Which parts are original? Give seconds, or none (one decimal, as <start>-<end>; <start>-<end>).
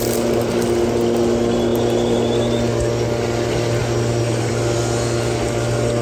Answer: 0.0-6.0